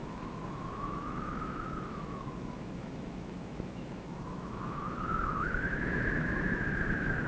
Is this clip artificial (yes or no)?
yes